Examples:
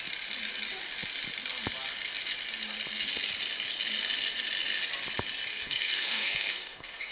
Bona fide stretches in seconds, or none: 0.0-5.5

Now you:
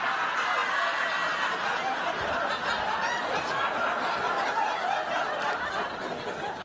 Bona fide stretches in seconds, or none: 0.0-6.6

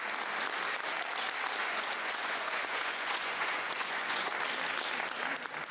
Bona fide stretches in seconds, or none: 0.0-1.6; 4.3-5.7

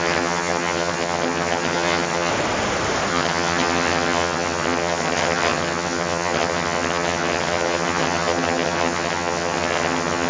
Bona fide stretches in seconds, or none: 2.3-3.1

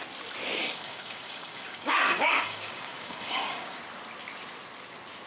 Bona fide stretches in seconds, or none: 0.0-0.6; 3.8-5.3

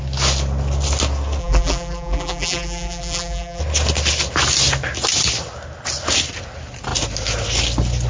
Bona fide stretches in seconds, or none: 0.0-1.4; 3.6-8.1

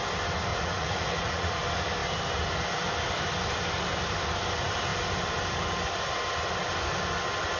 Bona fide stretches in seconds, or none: 0.0-0.5; 1.6-7.6

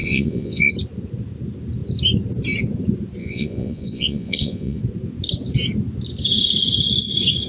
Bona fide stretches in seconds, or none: 0.7-3.2; 4.8-7.5